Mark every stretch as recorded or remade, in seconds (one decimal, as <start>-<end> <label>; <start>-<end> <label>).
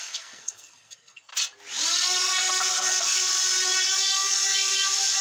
0.0-1.3 remade; 1.3-1.9 recorded; 1.9-3.3 remade; 3.3-3.8 recorded; 3.8-5.2 remade